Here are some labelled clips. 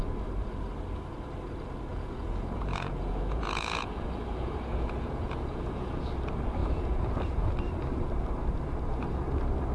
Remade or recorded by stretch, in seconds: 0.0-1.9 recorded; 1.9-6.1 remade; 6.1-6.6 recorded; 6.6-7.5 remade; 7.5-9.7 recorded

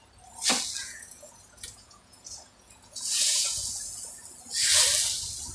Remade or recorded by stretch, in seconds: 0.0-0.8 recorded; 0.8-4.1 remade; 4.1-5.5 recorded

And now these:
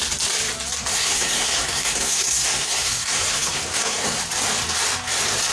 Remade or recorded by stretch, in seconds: 0.0-0.9 recorded; 0.9-4.2 remade; 4.2-5.5 recorded

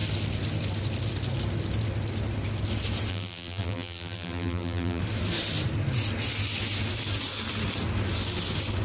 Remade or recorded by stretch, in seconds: 0.0-3.1 recorded; 3.1-5.0 remade; 5.0-8.8 recorded